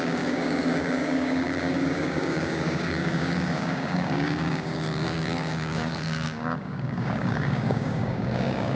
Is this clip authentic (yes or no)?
no